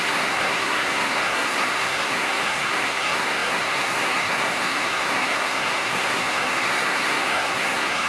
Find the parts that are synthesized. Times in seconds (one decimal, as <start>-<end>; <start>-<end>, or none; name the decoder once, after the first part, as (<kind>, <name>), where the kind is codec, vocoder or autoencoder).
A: 0.0-8.1 (codec, SNAC)